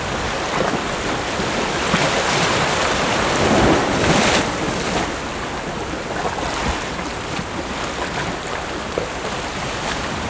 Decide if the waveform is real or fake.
real